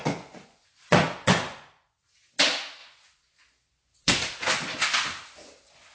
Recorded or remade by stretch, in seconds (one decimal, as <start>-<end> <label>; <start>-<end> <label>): 0.0-2.4 remade; 2.4-2.8 recorded; 2.8-4.1 remade; 4.1-5.9 recorded